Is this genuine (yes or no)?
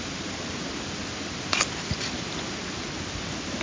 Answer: yes